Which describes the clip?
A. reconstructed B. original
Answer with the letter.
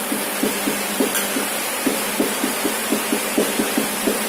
B